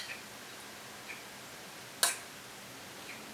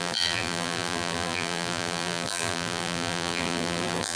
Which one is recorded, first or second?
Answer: first